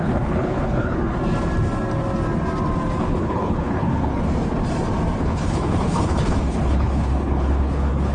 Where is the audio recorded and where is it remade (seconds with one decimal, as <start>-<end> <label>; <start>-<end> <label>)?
0.0-1.2 remade; 1.2-3.0 recorded; 3.0-4.1 remade; 4.1-5.2 recorded; 5.2-8.1 remade